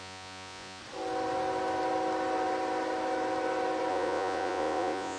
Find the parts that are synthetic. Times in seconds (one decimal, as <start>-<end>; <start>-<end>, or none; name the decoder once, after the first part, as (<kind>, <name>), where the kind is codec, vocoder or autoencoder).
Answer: 0.0-0.8 (vocoder, Vocos); 3.9-5.2